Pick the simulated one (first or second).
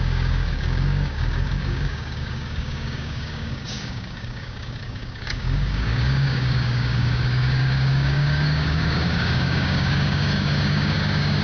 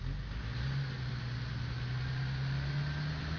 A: first